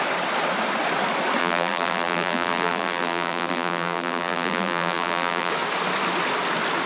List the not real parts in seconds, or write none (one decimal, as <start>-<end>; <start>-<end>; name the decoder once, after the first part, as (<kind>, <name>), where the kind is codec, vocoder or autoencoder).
1.4-5.5 (vocoder, BigVGAN v2)